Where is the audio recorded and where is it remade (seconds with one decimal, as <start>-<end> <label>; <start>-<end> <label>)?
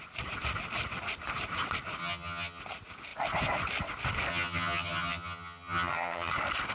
0.0-2.0 recorded; 2.0-2.6 remade; 2.6-4.3 recorded; 4.3-6.3 remade; 6.3-6.7 recorded